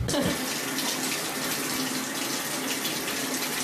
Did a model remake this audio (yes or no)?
no